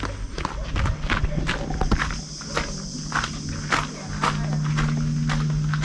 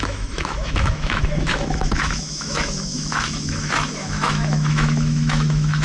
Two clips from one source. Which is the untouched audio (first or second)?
first